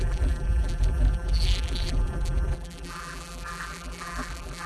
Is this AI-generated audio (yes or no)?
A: yes